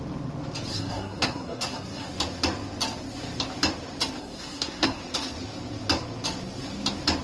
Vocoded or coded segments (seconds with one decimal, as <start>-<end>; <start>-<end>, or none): 0.7-2.1; 4.2-5.0